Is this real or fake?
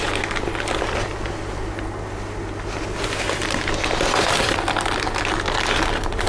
real